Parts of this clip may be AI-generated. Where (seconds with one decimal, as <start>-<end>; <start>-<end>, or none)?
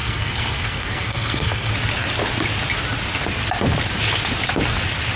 0.0-1.7